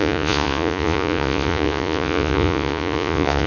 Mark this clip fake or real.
fake